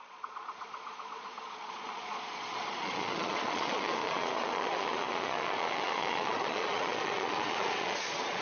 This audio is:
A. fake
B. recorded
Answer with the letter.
A